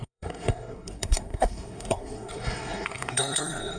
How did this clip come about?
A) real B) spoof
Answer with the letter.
B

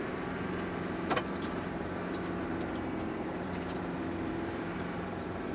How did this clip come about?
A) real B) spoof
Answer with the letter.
B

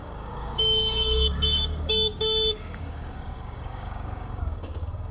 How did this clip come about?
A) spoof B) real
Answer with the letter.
A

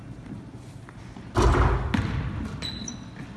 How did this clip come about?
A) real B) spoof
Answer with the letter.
A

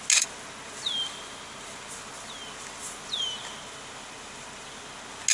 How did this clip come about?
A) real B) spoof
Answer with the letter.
A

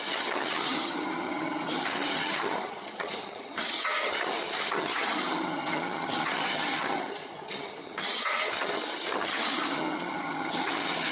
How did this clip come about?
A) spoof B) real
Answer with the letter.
A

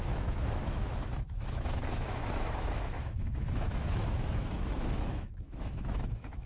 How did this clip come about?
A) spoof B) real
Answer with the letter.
A